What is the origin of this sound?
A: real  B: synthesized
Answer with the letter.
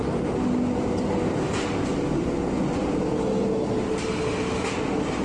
A